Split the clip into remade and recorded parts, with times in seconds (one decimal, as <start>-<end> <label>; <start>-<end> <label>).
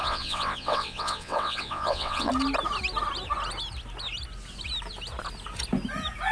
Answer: 0.0-2.3 remade; 2.3-6.3 recorded